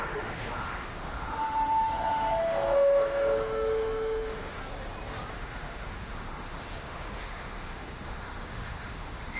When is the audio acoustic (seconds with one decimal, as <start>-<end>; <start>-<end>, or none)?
4.6-5.3

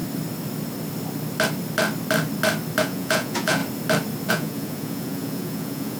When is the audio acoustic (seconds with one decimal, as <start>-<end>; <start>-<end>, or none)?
0.0-2.8; 3.6-4.3